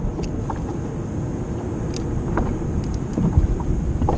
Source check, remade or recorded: recorded